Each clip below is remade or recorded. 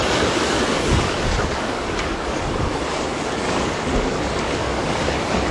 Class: remade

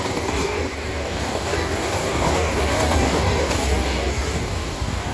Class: remade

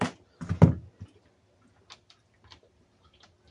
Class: recorded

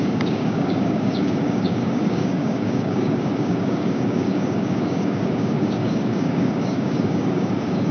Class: remade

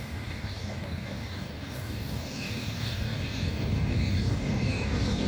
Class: remade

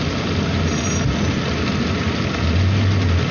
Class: recorded